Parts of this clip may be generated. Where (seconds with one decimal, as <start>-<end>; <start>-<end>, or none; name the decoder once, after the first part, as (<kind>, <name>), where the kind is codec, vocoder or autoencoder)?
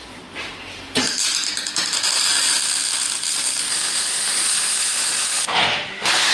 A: 3.7-6.3 (autoencoder, DAC-VAE)